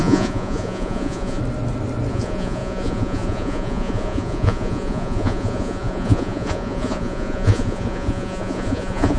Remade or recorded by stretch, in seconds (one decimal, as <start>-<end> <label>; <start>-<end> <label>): 0.0-1.4 remade; 1.4-2.1 recorded; 2.1-9.2 remade